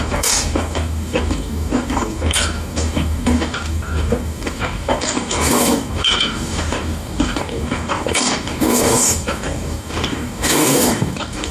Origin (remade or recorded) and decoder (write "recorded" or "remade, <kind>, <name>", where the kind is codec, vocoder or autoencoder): remade, codec, DAC